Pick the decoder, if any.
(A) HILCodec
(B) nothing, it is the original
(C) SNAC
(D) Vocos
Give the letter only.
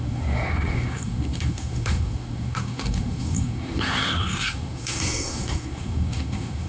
C